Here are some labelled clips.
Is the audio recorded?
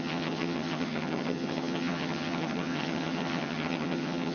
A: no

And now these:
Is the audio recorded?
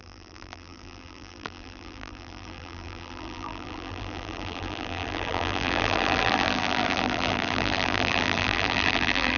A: no